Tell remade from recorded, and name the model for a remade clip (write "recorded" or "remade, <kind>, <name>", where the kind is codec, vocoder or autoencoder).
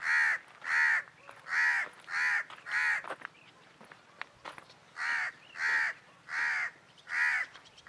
recorded